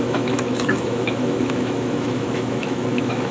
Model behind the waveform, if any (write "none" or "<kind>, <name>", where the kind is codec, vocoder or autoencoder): autoencoder, DAC-VAE